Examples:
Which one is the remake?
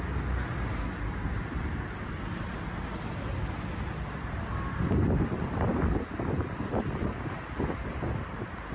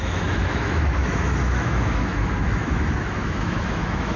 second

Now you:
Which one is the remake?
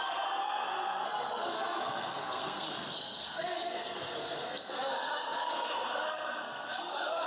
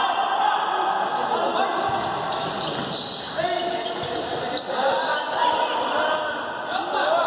first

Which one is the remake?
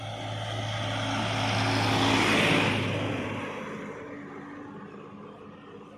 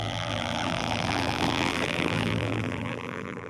second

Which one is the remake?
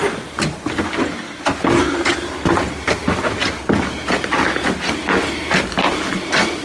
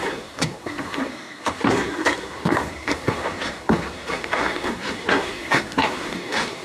second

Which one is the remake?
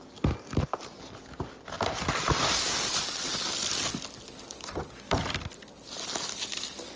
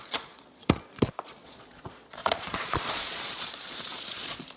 second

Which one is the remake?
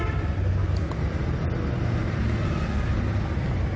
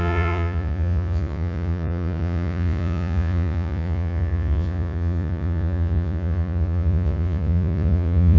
second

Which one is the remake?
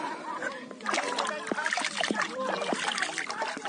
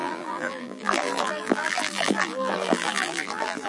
second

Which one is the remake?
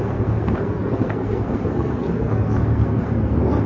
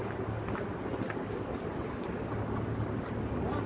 first